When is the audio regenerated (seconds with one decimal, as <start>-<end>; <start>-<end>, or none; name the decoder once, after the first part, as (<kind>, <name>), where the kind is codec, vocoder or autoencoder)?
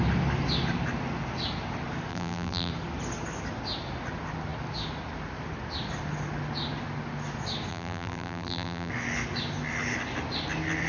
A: 2.1-2.7 (vocoder, BigVGAN v2); 7.7-8.9